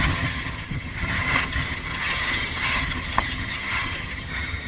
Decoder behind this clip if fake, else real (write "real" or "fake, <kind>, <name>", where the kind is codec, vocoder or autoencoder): fake, vocoder, HiFi-GAN